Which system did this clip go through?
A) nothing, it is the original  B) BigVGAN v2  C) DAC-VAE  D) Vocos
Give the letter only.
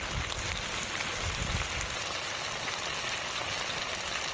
A